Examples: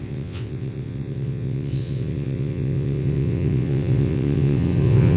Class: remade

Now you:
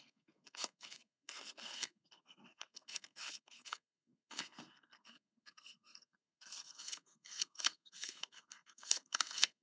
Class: remade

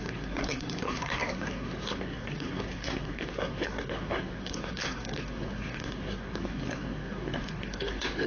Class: remade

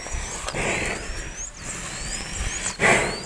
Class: recorded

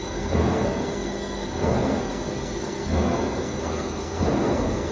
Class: remade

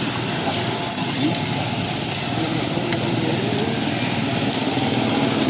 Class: recorded